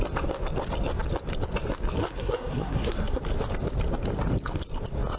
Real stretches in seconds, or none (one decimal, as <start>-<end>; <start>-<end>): 0.0-2.0; 3.2-5.2